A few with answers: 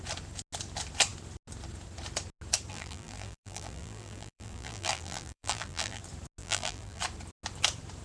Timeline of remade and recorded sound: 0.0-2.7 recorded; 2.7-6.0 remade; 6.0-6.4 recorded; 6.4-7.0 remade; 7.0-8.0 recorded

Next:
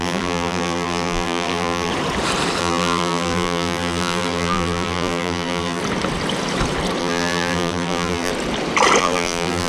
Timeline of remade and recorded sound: 0.0-1.9 remade; 1.9-2.6 recorded; 2.6-5.8 remade; 5.8-7.0 recorded; 7.0-8.3 remade; 8.3-9.0 recorded; 9.0-9.7 remade

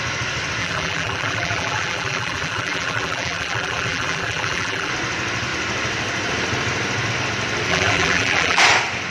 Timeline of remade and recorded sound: 0.0-0.6 recorded; 0.6-4.9 remade; 4.9-7.7 recorded; 7.7-8.6 remade; 8.6-9.1 recorded

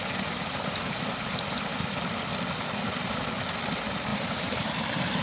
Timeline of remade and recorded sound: 0.0-4.1 recorded; 4.1-5.2 remade

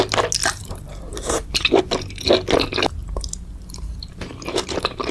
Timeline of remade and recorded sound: 0.0-0.4 recorded; 0.4-1.8 remade; 1.8-3.0 recorded; 3.0-5.1 remade